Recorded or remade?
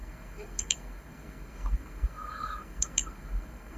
remade